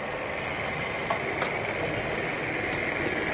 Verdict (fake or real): real